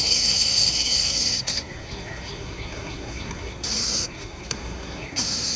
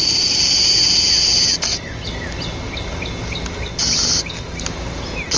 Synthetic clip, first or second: first